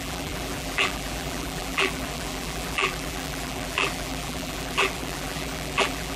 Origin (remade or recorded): remade